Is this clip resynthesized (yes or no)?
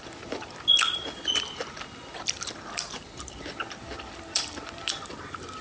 yes